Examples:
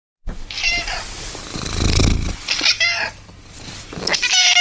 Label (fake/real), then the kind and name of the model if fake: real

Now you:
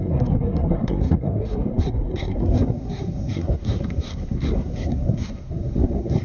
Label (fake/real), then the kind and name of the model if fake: fake, codec, SNAC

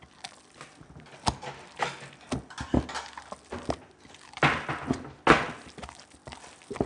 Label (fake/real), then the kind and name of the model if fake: real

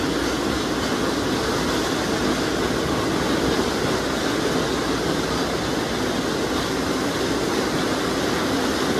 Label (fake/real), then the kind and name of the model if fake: real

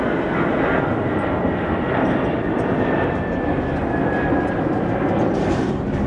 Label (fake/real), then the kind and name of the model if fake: real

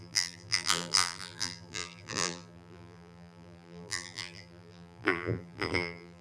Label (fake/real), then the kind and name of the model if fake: fake, vocoder, BigVGAN v2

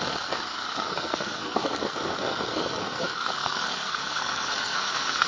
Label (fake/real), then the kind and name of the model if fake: fake, codec, SNAC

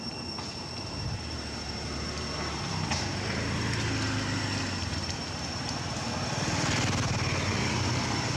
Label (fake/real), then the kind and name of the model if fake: real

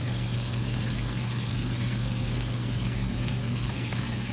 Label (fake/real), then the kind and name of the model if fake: fake, codec, SNAC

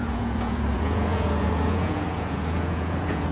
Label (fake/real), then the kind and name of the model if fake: fake, vocoder, Vocos